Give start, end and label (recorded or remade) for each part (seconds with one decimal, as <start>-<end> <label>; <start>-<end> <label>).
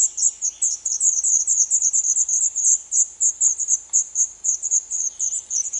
0.0-2.7 recorded; 2.7-3.3 remade; 3.3-4.9 recorded; 4.9-5.8 remade